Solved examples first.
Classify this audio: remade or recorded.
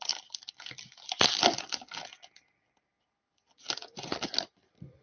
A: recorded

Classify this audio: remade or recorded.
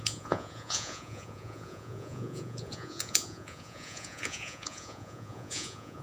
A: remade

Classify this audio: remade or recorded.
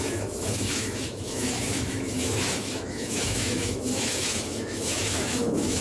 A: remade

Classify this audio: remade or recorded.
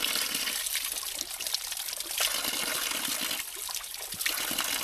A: recorded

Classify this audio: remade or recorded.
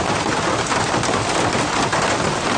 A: recorded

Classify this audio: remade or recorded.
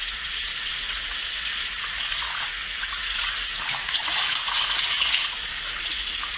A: remade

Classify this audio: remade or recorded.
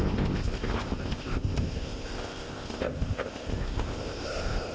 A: remade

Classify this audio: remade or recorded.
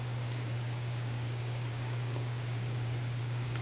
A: remade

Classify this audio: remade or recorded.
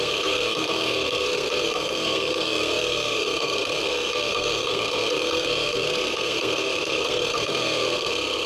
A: remade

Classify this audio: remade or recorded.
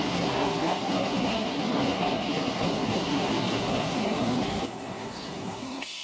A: remade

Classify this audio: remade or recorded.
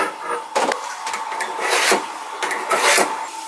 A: recorded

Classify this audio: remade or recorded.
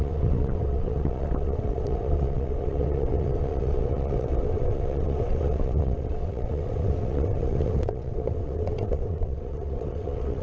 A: remade